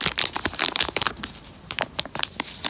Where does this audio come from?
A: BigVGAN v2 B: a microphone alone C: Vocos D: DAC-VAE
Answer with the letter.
A